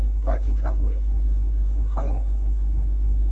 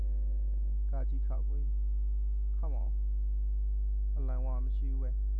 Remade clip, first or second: first